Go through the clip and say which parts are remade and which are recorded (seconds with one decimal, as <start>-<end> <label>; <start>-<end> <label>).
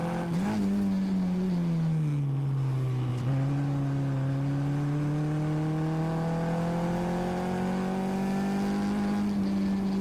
0.0-10.0 recorded